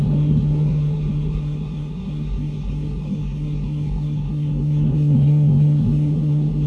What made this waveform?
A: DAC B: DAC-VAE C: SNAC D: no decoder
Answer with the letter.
C